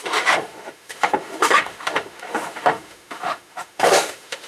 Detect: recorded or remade remade